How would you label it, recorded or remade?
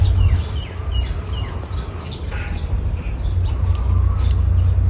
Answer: recorded